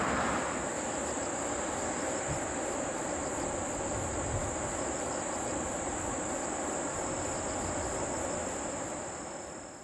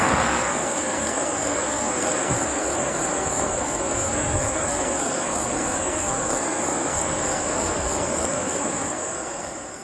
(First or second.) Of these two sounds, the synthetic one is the second